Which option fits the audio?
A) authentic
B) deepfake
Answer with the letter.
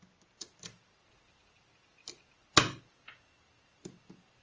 A